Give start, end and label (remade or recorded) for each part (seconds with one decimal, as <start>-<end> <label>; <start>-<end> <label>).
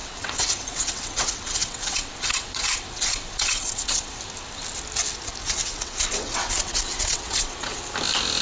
0.0-4.2 remade; 4.2-5.4 recorded; 5.4-7.8 remade; 7.8-8.4 recorded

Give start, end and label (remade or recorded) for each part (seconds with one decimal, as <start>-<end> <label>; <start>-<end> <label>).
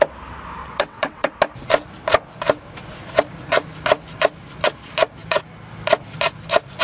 0.0-0.6 recorded; 0.6-1.3 remade; 1.3-6.8 recorded